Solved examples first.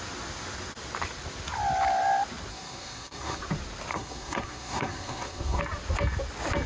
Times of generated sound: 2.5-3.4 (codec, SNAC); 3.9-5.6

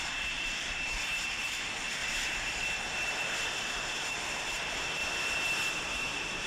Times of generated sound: 0.0-2.0 (vocoder, BigVGAN v2); 3.6-5.0; 5.7-6.5

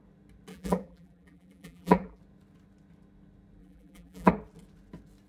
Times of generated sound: 0.5-2.2 (vocoder, BigVGAN v2); 3.6-4.3

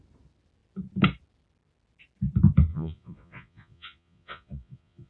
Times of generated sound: 2.7-5.1 (vocoder, Vocos)

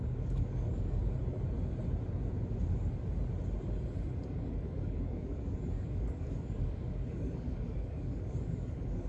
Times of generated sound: 0.0-1.0 (codec, DAC); 4.2-9.1

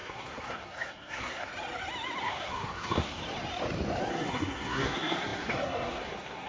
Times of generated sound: 0.0-1.5 (codec, SNAC); 2.2-3.2; 4.1-6.5